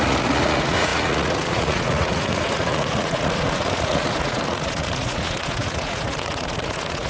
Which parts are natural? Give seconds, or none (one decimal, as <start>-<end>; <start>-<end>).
none